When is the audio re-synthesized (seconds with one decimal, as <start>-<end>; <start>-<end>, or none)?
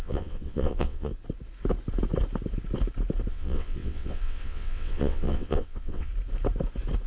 0.0-1.1; 3.3-6.1